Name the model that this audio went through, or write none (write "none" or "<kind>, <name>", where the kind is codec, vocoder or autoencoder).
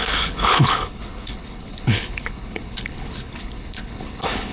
codec, HILCodec